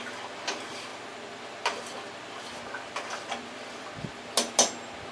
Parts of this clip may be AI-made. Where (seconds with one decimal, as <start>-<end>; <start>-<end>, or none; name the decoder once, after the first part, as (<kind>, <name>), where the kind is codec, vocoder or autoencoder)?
none